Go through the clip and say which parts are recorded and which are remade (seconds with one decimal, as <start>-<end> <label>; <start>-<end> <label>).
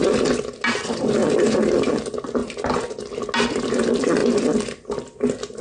0.0-5.6 recorded